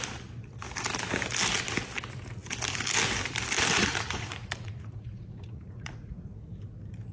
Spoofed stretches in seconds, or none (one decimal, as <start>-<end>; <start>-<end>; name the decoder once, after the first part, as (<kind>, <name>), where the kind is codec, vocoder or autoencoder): 3.8-6.4 (vocoder, Vocos)